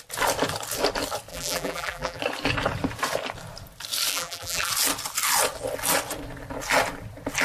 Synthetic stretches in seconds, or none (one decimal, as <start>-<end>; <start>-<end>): 1.3-2.2; 4.1-4.7

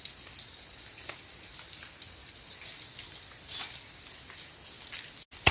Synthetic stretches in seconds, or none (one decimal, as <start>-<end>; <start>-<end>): none

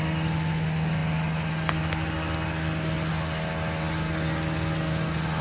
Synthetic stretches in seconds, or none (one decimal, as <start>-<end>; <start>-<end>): none

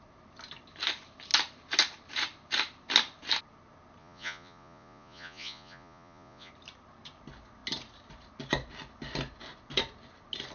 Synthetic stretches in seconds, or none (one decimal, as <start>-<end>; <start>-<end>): 4.0-6.5

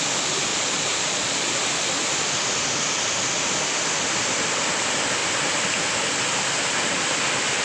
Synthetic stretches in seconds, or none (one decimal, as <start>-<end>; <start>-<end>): 0.5-1.6

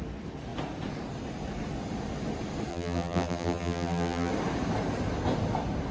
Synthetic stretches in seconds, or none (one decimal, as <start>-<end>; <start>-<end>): 2.7-4.3

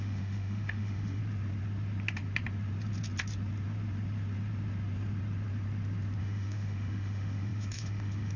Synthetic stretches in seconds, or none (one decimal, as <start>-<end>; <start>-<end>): 0.0-1.2; 6.2-8.4

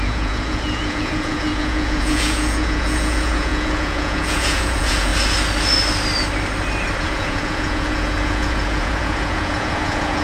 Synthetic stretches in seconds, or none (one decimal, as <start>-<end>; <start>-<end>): 0.0-5.1; 7.0-10.2